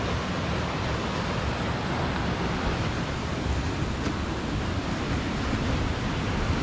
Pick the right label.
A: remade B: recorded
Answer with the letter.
B